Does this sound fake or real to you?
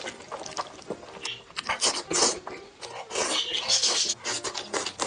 real